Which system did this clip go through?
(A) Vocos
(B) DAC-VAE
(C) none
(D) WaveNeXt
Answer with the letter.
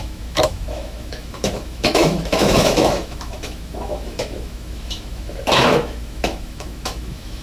B